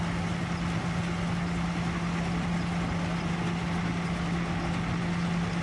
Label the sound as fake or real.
real